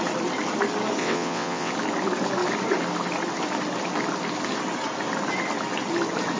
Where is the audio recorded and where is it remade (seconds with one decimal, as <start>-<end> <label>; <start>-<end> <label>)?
0.0-1.0 recorded; 1.0-1.7 remade; 1.7-6.4 recorded